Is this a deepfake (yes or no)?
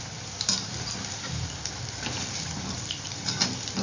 yes